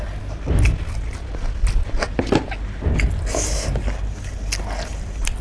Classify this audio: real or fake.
real